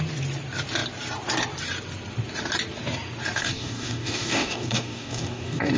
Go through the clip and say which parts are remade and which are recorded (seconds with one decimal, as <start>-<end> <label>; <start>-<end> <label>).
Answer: 0.0-3.4 recorded; 3.4-5.8 remade